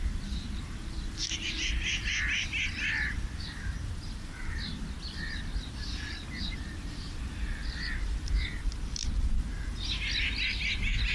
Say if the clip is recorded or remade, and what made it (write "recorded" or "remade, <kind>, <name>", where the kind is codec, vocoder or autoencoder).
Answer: remade, vocoder, BigVGAN v2